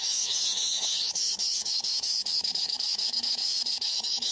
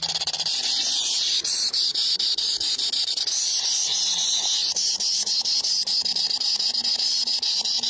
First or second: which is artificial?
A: first